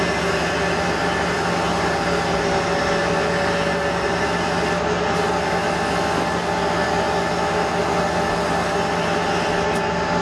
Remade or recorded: recorded